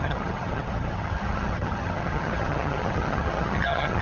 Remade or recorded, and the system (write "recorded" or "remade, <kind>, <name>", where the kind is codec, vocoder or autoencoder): remade, vocoder, HiFi-GAN